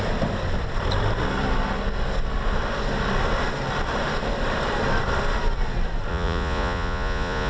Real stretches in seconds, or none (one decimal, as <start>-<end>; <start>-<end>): 0.0-6.1